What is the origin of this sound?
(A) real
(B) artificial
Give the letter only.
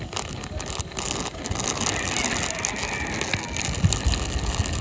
A